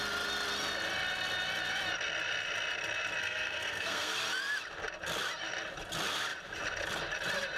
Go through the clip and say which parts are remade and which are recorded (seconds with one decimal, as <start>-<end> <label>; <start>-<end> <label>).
0.0-3.2 recorded; 3.2-4.1 remade; 4.1-7.6 recorded